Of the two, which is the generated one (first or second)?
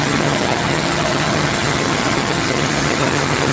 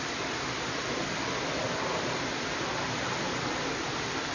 first